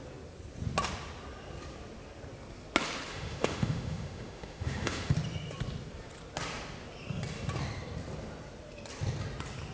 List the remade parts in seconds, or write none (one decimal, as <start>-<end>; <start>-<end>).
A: 3.1-5.1